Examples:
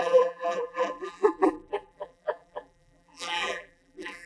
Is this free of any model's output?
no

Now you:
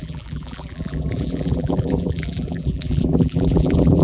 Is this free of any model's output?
no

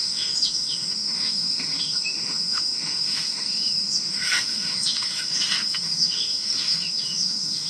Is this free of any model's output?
no